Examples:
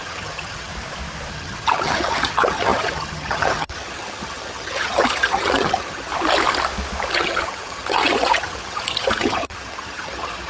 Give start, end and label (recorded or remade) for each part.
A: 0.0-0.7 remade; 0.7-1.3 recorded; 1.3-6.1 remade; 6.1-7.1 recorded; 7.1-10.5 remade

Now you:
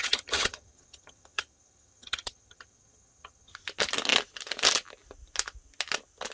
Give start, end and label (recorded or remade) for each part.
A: 0.0-3.5 remade; 3.5-6.3 recorded